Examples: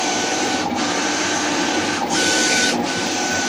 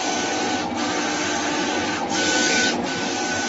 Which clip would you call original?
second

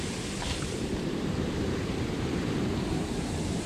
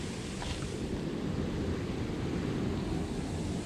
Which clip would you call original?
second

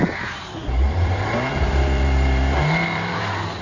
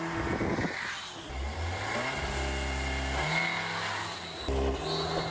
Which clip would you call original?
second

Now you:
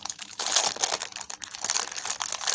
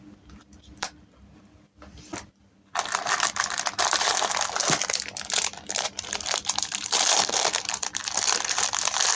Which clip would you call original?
first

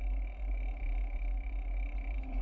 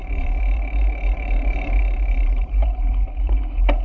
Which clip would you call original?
first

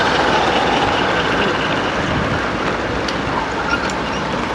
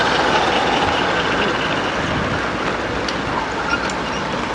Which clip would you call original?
second